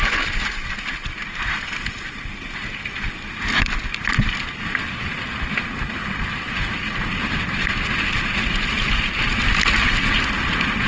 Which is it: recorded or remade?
recorded